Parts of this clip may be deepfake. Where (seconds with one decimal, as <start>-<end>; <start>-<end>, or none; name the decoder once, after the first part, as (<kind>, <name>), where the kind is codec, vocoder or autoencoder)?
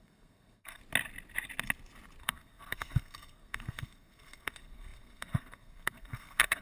0.0-0.8 (codec, SNAC); 2.2-6.6